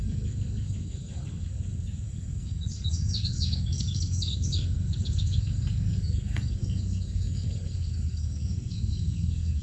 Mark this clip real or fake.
fake